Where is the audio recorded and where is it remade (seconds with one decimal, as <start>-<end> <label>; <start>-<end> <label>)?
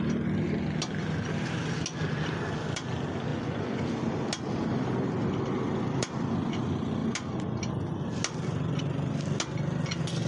0.0-3.3 recorded; 3.3-3.8 remade; 3.8-10.3 recorded